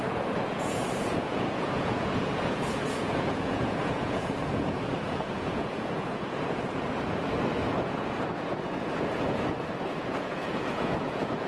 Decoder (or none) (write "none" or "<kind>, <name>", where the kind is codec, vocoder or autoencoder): vocoder, Vocos